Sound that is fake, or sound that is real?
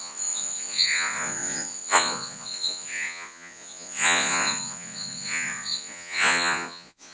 fake